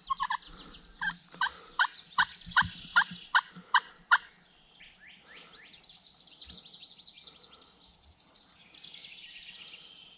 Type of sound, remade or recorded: recorded